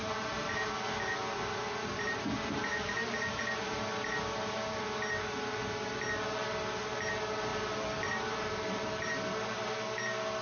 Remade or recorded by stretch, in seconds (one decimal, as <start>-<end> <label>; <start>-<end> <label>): 0.0-4.8 remade; 4.8-7.5 recorded; 7.5-9.7 remade; 9.7-10.4 recorded